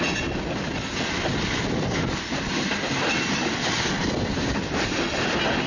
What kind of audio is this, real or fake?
real